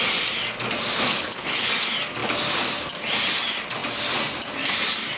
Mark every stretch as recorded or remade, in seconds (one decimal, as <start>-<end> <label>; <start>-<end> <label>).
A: 0.0-1.1 recorded; 1.1-1.7 remade; 1.7-5.2 recorded